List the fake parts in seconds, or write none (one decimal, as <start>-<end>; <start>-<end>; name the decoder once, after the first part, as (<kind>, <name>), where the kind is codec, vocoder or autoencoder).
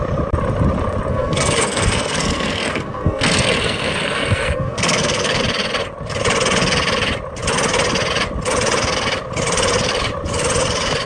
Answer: 1.1-5.4 (codec, SNAC)